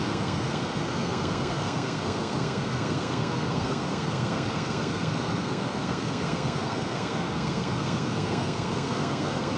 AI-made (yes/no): yes